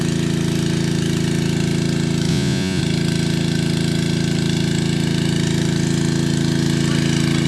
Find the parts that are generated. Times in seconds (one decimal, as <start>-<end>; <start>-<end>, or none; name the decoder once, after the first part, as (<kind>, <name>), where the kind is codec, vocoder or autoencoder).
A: 2.3-2.8 (vocoder, Vocos)